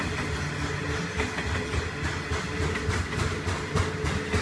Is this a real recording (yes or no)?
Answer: yes